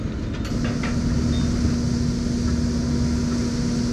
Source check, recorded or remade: recorded